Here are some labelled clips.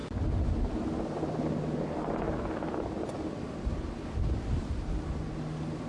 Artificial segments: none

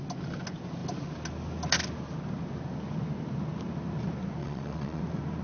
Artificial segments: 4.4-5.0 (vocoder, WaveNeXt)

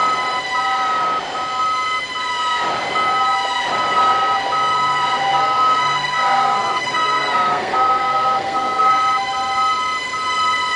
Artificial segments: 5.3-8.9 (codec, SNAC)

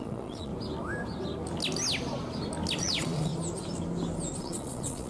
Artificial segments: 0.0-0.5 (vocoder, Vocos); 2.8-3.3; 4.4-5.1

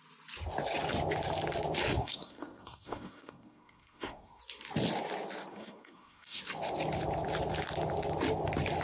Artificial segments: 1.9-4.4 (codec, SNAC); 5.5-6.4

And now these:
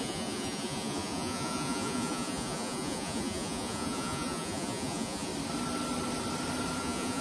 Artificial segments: 0.0-5.3 (vocoder, Vocos); 6.8-7.2